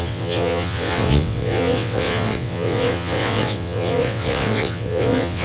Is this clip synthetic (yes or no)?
yes